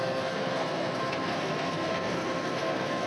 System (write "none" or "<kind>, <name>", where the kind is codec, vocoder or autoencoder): codec, SNAC